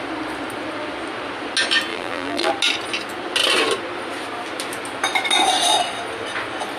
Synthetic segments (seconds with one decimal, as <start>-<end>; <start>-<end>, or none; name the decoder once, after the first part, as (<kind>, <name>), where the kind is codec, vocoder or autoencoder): 1.9-2.5 (vocoder, BigVGAN v2)